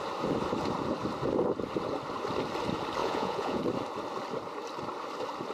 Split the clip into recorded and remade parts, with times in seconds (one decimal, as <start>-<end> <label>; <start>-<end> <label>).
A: 0.0-3.0 recorded; 3.0-3.6 remade; 3.6-5.5 recorded